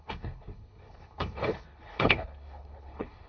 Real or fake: fake